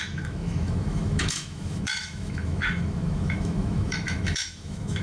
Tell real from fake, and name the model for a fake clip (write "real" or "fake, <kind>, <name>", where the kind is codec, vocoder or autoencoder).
fake, autoencoder, DAC-VAE